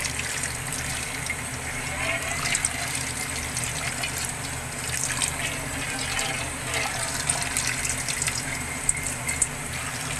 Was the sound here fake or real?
real